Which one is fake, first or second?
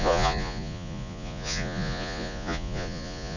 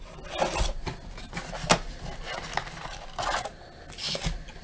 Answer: first